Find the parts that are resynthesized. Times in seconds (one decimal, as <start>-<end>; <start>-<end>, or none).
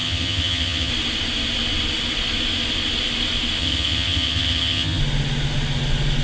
0.0-0.9; 3.6-5.0